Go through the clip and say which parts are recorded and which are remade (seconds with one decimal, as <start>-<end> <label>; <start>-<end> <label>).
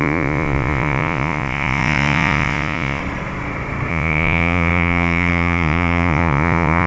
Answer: 0.0-3.0 remade; 3.0-3.9 recorded; 3.9-6.9 remade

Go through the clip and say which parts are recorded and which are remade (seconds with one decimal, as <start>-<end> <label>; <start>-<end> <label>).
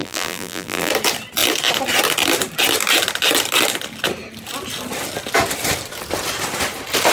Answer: 0.0-0.9 remade; 0.9-7.1 recorded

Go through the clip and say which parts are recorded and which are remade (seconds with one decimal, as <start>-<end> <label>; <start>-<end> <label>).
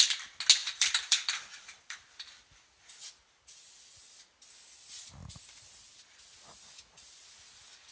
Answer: 0.0-0.6 recorded; 0.6-2.4 remade; 2.4-5.2 recorded; 5.2-6.2 remade; 6.2-7.9 recorded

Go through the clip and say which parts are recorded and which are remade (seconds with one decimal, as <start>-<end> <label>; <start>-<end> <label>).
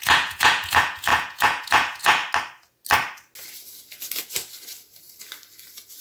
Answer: 0.0-2.2 remade; 2.2-6.0 recorded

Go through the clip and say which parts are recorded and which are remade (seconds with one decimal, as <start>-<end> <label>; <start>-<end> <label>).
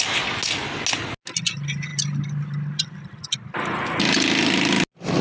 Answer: 0.0-5.2 recorded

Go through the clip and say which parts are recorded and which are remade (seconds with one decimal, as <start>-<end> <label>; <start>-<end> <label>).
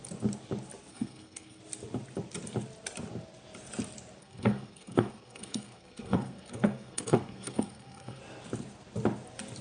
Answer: 0.0-0.9 recorded; 0.9-1.6 remade; 1.6-4.2 recorded; 4.2-8.2 remade; 8.2-9.6 recorded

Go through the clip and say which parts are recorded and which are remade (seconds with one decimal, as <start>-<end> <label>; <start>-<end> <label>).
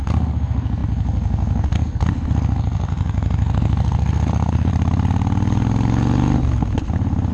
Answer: 0.0-4.7 remade; 4.7-7.3 recorded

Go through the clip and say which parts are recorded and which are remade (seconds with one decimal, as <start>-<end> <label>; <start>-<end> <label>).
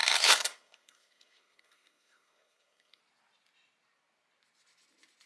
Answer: 0.0-3.0 remade; 3.0-5.3 recorded